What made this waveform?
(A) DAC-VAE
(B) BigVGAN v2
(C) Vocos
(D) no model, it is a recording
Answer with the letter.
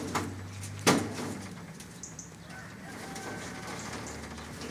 D